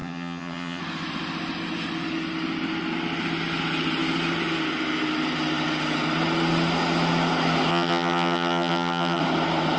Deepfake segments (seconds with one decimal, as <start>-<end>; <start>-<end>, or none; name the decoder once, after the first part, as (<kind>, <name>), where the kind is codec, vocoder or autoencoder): 0.0-0.8 (vocoder, HiFi-GAN); 7.7-9.2